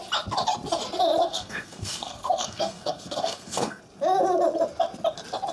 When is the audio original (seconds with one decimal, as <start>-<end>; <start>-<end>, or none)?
0.0-1.2; 3.8-5.5